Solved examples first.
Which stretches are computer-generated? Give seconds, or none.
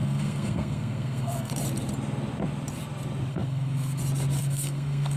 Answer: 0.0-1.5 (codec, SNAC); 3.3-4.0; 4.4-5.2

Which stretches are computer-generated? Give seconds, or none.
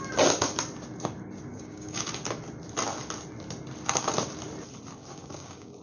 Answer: 1.5-2.1 (codec, DAC); 5.0-5.8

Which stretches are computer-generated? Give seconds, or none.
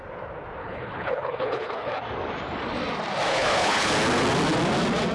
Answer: 0.6-2.0 (codec, HILCodec); 3.3-3.9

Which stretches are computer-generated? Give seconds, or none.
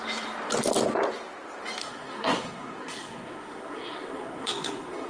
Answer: 1.8-5.1 (codec, SNAC)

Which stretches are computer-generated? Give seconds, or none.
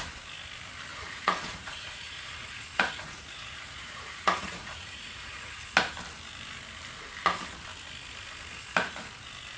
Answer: 0.9-5.6 (vocoder, Vocos)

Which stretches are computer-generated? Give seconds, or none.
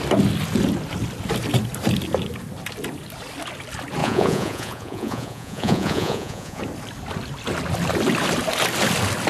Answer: 4.0-6.6 (vocoder, Vocos)